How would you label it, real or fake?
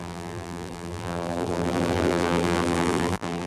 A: fake